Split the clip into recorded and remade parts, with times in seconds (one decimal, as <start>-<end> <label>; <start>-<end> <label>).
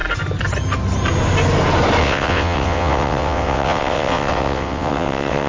0.0-2.0 recorded; 2.0-5.5 remade